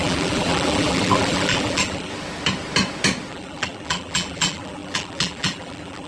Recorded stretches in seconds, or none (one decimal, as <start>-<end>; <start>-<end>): 2.1-3.3